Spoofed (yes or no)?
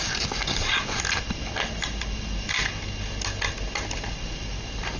no